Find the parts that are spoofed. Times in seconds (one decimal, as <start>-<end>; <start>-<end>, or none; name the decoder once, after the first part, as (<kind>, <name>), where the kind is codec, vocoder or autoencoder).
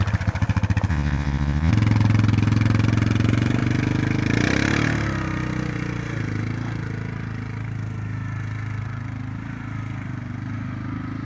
0.9-1.7 (vocoder, Vocos)